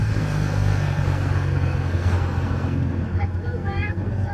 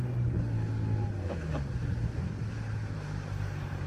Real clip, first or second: second